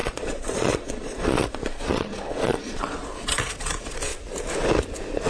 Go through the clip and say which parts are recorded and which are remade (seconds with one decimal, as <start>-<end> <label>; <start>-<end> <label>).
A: 0.0-4.1 remade; 4.1-5.3 recorded